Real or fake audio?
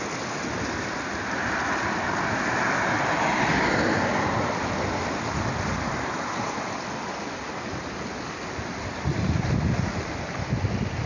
real